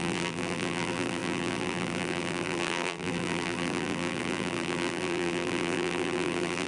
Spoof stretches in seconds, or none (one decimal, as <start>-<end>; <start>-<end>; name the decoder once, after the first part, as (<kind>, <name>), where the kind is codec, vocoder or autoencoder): 0.0-6.7 (vocoder, BigVGAN v2)